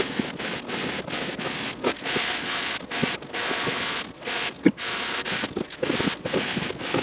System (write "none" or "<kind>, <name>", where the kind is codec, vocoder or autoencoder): none